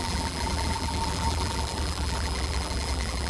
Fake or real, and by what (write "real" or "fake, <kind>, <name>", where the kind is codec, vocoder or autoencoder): fake, vocoder, BigVGAN v2